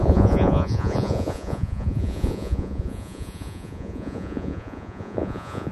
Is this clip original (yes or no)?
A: no